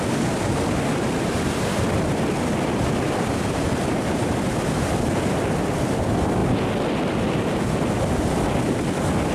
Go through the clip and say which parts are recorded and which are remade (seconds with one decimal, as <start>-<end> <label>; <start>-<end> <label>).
0.0-6.4 remade; 6.4-8.2 recorded; 8.2-9.3 remade